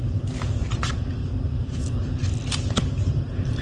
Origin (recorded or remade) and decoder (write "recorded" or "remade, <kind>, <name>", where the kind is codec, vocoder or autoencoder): remade, vocoder, BigVGAN v2